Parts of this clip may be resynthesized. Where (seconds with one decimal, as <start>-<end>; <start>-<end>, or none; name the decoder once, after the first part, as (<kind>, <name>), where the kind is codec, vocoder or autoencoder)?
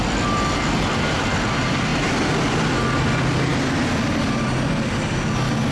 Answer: none